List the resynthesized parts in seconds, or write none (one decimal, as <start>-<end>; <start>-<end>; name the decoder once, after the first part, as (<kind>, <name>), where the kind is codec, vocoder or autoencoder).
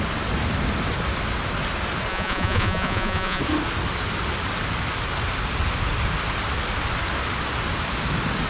2.1-3.4 (vocoder, Vocos)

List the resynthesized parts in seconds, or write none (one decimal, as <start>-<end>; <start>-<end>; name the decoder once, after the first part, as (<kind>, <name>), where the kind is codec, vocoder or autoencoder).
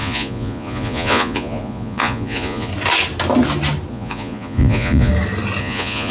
0.0-2.7 (vocoder, Vocos); 3.9-5.1; 5.6-6.1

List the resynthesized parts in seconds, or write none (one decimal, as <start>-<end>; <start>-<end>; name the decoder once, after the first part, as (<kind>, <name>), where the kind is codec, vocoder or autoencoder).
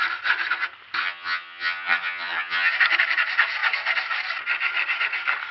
1.0-2.7 (vocoder, HiFi-GAN)